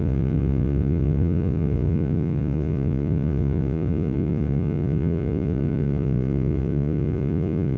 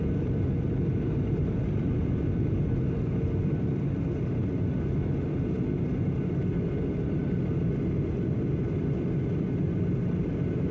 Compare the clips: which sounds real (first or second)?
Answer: second